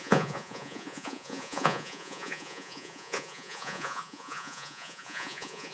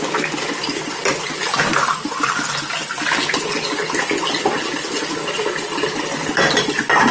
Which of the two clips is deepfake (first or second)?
first